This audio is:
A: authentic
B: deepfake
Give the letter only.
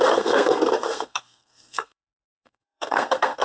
B